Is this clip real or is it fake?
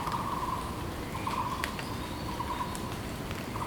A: real